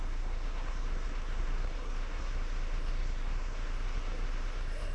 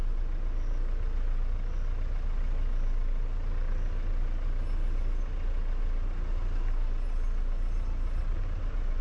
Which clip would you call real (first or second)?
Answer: second